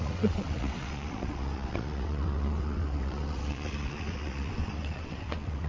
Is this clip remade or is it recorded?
remade